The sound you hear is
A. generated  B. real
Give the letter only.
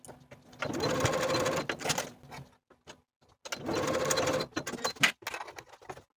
B